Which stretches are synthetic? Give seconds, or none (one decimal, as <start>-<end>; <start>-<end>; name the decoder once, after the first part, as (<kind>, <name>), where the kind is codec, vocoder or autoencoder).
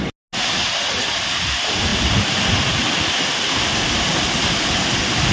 none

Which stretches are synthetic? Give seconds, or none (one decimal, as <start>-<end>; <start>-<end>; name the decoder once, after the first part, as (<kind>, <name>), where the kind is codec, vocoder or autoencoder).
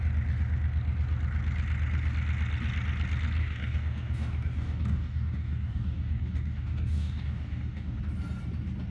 3.4-8.0 (codec, DAC)